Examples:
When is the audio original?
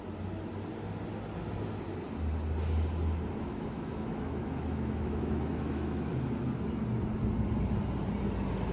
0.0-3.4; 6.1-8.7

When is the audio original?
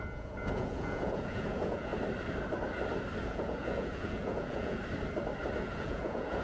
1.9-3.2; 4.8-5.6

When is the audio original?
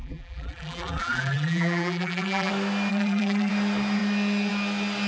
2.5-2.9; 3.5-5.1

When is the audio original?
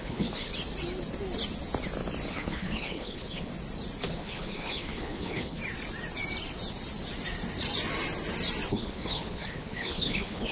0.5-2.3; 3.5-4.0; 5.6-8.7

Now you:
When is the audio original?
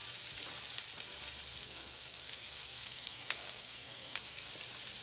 0.0-1.5; 4.5-5.0